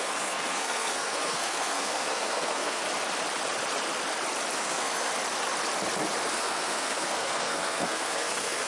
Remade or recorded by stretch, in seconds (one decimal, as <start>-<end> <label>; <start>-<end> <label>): 0.0-2.8 remade; 2.8-4.6 recorded; 4.6-5.1 remade; 5.1-6.3 recorded; 6.3-8.7 remade